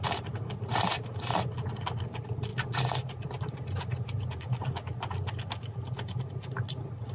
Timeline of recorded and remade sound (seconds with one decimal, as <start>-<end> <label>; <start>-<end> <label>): 0.0-7.1 recorded